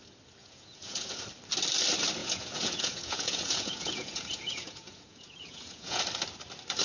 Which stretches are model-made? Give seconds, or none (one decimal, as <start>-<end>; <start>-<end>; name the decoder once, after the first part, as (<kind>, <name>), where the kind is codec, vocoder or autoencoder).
0.4-1.2 (vocoder, Vocos); 2.2-6.0